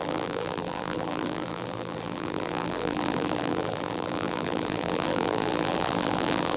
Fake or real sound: fake